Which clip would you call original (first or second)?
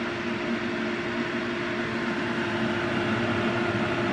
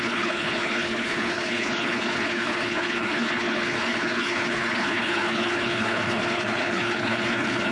first